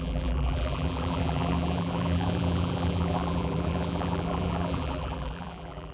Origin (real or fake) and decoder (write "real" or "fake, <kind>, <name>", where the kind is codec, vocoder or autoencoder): fake, vocoder, BigVGAN v2